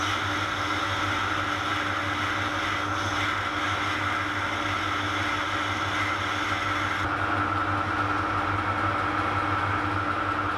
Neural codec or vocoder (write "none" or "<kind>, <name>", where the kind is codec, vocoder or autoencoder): none